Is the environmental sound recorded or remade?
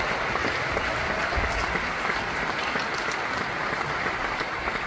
recorded